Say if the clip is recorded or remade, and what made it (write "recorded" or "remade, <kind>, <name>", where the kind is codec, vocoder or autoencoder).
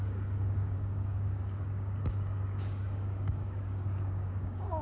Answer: remade, codec, DAC